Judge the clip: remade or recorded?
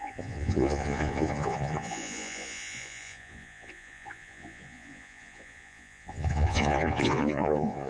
remade